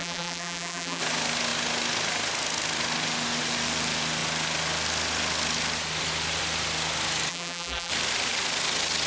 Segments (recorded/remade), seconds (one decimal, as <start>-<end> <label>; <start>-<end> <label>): 0.0-1.0 remade; 1.0-7.3 recorded; 7.3-7.9 remade; 7.9-9.1 recorded